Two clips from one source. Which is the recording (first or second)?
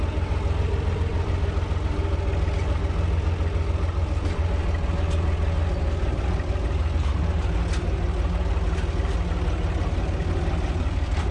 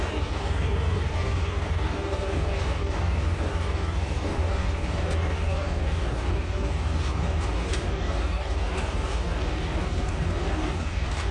first